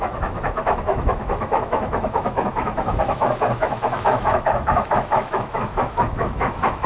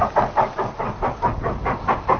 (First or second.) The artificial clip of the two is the first